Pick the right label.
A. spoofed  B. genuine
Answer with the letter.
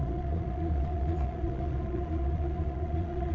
A